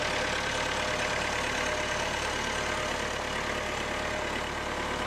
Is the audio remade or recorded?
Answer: recorded